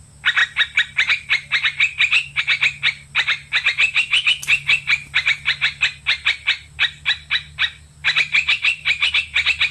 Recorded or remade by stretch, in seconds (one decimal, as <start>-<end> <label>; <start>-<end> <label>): 0.0-8.0 recorded; 8.0-9.1 remade; 9.1-9.7 recorded